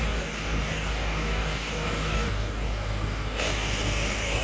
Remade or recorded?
remade